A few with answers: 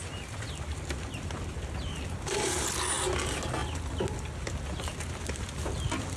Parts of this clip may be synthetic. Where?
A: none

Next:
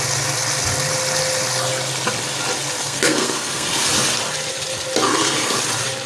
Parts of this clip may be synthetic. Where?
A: 2.8-3.8 (codec, SNAC); 5.1-5.6

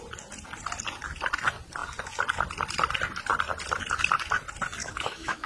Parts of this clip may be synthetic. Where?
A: 4.8-5.5 (autoencoder, DAC-VAE)